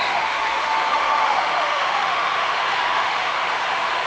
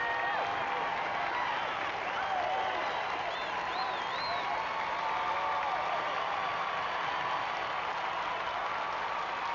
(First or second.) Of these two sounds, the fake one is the first